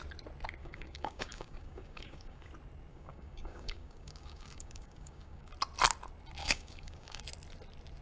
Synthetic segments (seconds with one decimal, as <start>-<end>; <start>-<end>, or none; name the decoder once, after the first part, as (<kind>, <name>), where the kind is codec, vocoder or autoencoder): 0.6-2.5 (codec, DAC); 2.9-5.5; 6.4-7.2